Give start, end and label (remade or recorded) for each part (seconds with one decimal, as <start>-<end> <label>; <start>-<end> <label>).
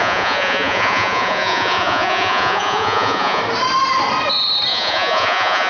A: 0.0-3.4 remade; 3.4-4.7 recorded; 4.7-5.7 remade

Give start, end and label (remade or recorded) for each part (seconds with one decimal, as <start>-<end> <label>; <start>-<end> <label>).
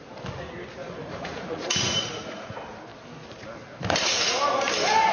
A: 0.0-0.8 recorded; 0.8-2.5 remade; 2.5-5.1 recorded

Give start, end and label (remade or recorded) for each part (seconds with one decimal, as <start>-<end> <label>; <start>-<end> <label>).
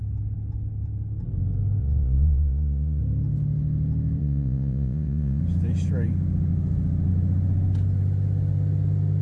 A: 0.0-1.8 recorded; 1.8-3.0 remade; 3.0-4.2 recorded; 4.2-5.4 remade; 5.4-9.2 recorded